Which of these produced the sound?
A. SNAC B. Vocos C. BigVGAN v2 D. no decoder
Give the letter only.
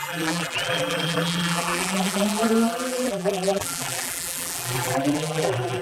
C